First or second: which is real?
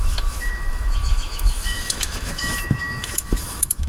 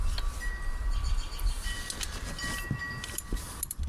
second